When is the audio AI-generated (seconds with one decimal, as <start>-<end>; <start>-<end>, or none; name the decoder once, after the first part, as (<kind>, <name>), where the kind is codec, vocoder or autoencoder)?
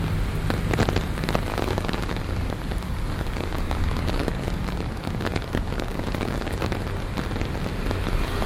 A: 1.5-6.6 (codec, DAC)